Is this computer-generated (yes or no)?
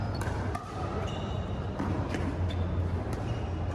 no